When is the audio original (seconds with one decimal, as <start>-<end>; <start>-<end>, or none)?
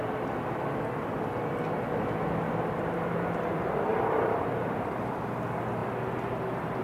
0.0-2.8; 5.8-6.8